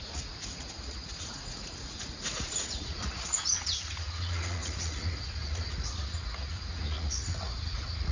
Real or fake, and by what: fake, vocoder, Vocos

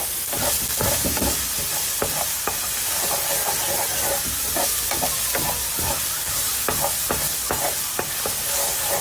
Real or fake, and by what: real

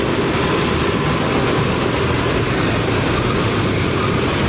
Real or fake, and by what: fake, vocoder, BigVGAN v2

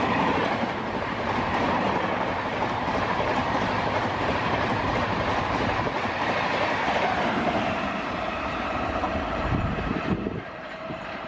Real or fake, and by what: fake, vocoder, BigVGAN v2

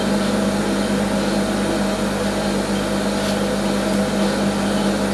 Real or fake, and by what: real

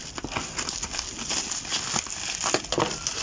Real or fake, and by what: real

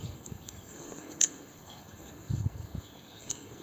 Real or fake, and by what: fake, codec, SNAC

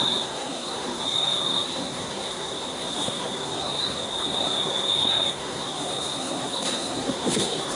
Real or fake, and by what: fake, codec, SNAC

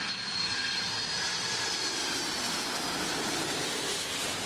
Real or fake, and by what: fake, vocoder, BigVGAN v2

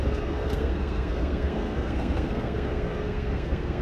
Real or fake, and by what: fake, codec, SNAC